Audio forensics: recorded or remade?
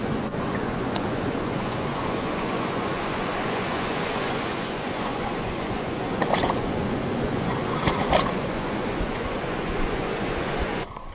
remade